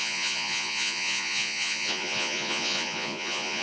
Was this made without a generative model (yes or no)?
no